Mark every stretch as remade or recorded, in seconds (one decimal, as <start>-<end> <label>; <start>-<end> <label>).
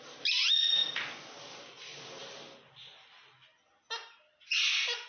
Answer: 0.0-5.1 recorded